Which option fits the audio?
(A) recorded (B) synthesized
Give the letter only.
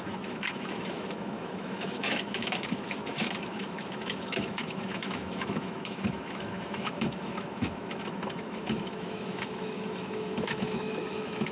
B